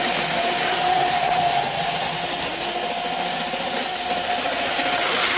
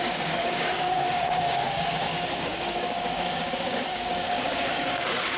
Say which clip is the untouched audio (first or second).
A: first